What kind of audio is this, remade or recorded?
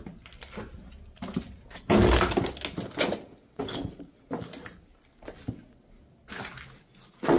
recorded